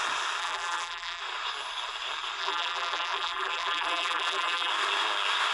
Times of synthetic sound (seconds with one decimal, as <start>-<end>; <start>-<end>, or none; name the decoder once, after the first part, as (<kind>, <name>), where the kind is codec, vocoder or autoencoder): 0.4-1.2 (vocoder, BigVGAN v2); 2.4-4.7

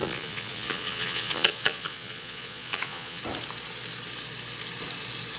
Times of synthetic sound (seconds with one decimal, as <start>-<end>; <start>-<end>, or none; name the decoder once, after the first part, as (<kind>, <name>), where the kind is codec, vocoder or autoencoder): 0.0-3.2 (vocoder, Vocos)

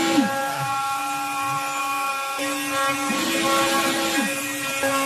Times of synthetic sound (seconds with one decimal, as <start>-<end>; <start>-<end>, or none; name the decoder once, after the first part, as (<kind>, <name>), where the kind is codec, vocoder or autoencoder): 0.5-1.0 (codec, SNAC); 1.8-2.4

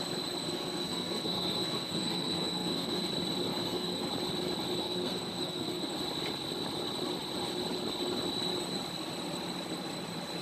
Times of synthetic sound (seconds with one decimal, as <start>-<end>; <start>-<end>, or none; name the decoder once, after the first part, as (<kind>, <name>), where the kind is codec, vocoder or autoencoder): 0.4-3.1 (codec, SNAC); 3.5-4.1; 4.8-6.0

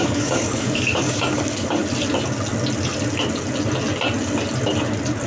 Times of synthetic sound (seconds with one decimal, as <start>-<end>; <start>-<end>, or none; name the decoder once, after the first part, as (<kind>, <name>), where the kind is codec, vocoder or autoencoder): 0.0-1.8 (codec, DAC)

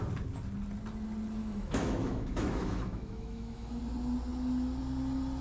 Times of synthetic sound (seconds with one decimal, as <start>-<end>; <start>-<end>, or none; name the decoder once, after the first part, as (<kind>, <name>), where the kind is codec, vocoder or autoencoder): 1.4-3.8 (autoencoder, DAC-VAE)